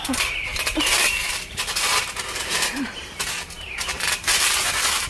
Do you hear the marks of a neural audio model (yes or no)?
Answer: yes